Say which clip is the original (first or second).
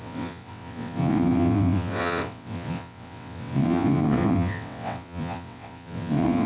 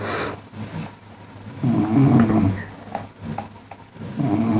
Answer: second